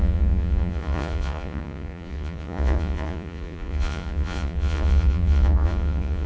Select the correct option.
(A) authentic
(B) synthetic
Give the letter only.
B